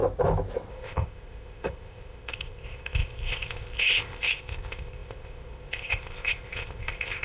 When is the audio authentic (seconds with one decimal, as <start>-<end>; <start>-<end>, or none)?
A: 0.0-0.7